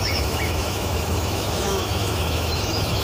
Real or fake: fake